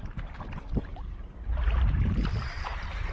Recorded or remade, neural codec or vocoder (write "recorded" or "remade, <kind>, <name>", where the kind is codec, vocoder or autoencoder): recorded